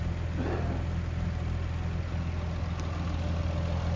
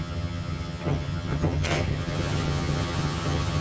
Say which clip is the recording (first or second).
first